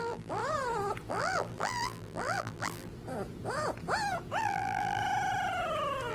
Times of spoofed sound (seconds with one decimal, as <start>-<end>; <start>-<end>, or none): 0.0-0.4; 1.1-2.9; 4.4-5.0